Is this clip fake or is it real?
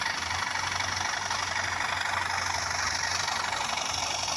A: real